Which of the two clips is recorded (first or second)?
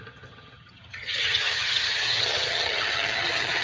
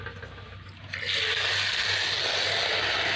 second